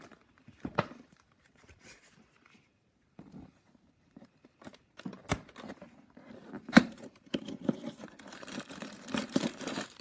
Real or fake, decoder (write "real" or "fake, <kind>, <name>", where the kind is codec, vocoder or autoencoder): fake, vocoder, BigVGAN v2